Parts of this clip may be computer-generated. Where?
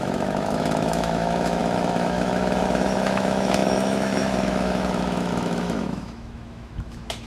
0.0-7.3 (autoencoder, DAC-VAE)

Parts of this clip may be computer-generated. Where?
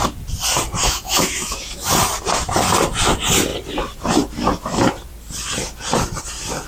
0.8-1.9 (autoencoder, DAC-VAE)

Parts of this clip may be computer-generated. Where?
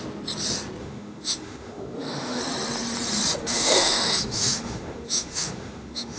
0.8-2.4 (autoencoder, DAC-VAE); 3.4-6.2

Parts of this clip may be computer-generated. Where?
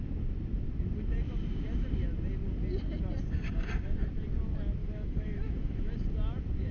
4.8-5.9 (autoencoder, DAC-VAE)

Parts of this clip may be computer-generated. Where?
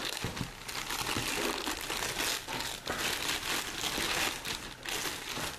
none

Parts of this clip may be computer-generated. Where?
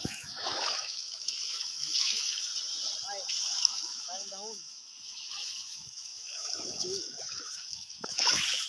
0.0-2.5 (autoencoder, DAC-VAE); 3.3-8.7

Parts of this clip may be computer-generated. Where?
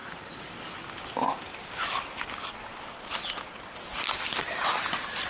none